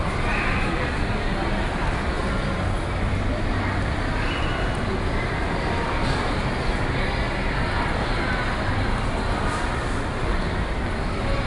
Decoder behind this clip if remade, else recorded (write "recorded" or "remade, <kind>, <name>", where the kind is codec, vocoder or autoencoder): recorded